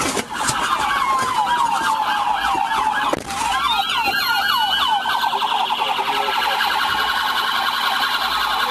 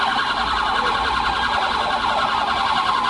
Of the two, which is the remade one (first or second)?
second